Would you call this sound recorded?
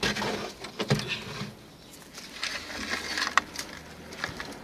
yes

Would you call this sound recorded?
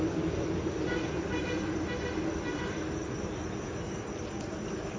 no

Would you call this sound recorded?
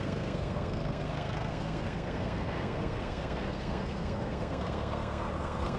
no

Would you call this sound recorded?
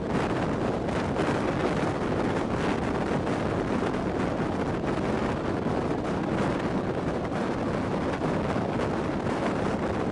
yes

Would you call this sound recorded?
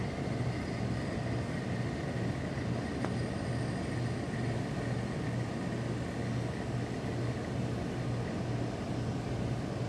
yes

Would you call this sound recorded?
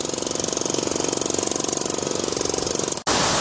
yes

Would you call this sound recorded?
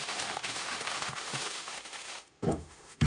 no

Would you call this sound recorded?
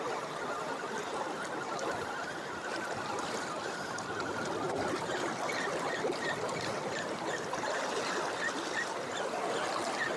yes